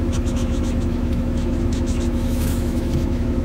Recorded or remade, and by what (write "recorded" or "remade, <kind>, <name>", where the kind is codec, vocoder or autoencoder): remade, autoencoder, DAC-VAE